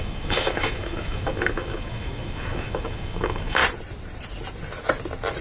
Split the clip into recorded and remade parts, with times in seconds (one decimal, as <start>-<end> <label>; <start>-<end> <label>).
0.0-3.6 remade; 3.6-5.4 recorded